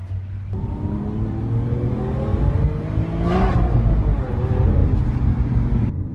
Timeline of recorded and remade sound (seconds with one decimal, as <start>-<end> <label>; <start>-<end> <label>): 0.0-6.1 recorded